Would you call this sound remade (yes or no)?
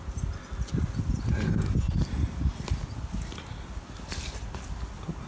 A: no